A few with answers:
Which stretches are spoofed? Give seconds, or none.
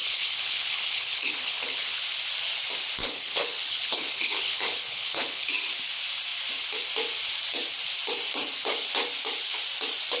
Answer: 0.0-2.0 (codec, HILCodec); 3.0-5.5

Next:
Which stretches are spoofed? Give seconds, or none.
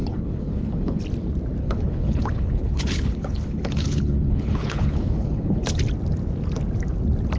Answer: 0.0-1.0 (codec, HILCodec); 1.6-5.8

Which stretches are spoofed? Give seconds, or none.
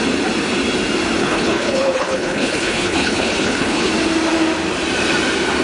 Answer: 1.2-3.9 (codec, HILCodec)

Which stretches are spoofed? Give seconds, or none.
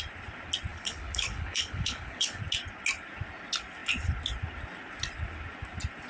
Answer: 0.7-2.4 (codec, HILCodec)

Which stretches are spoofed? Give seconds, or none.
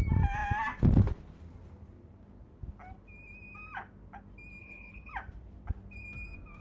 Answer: 4.6-5.1 (codec, HILCodec)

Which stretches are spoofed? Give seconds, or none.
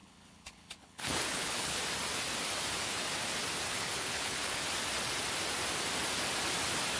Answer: 0.0-1.8 (codec, HILCodec); 3.7-4.6